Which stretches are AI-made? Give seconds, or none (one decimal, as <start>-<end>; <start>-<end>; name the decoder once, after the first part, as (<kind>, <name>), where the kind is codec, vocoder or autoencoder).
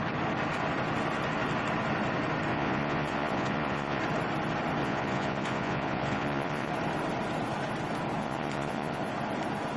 2.5-4.0 (vocoder, Vocos); 4.8-6.7; 8.2-9.0